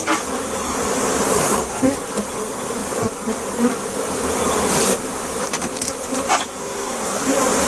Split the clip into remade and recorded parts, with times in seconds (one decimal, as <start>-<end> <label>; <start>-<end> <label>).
0.0-1.4 recorded; 1.4-2.0 remade; 2.0-6.6 recorded; 6.6-7.2 remade; 7.2-7.7 recorded